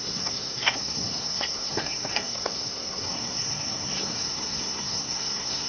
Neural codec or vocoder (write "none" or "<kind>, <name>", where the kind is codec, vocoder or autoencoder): codec, SNAC